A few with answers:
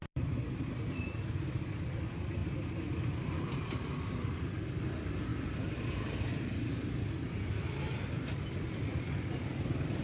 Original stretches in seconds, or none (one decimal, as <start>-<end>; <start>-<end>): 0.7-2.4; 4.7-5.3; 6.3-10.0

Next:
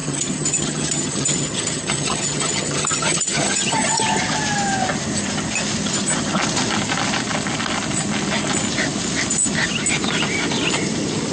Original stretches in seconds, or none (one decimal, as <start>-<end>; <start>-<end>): 4.0-11.3

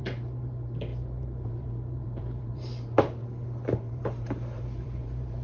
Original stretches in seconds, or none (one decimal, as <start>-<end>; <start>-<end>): 3.2-3.8

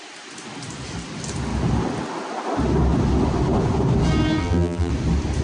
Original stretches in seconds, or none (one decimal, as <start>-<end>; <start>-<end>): 0.0-4.4; 4.9-5.4

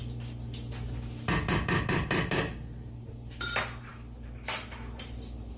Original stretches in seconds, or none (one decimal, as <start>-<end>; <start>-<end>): 0.0-5.6

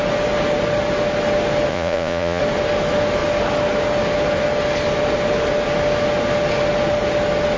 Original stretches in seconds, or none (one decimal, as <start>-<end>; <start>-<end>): 0.0-1.7; 2.4-7.6